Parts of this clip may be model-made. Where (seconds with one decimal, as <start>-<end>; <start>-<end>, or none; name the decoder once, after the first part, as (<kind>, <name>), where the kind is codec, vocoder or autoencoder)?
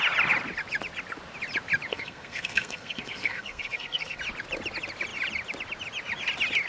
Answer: 1.9-4.2 (codec, SNAC)